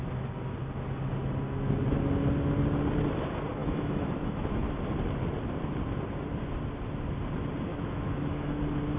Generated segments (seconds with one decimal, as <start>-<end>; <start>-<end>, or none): 3.6-4.6; 7.7-8.6